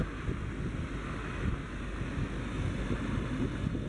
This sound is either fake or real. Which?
real